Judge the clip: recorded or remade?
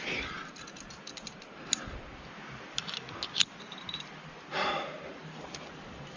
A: recorded